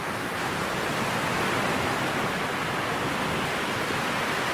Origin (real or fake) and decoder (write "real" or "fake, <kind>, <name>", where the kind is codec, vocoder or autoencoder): real